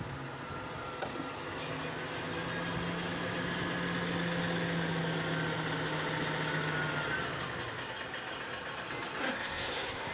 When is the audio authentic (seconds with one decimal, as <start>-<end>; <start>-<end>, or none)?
0.0-9.2